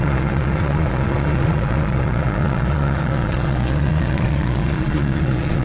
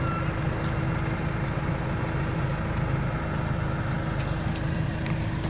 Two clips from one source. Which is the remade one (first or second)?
first